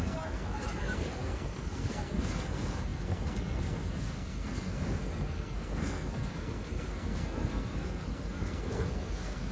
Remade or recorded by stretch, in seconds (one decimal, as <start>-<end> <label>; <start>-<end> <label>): 0.0-9.5 remade